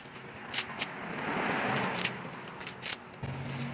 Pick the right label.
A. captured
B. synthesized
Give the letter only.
A